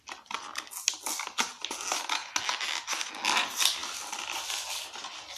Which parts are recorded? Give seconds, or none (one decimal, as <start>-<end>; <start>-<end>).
0.0-5.4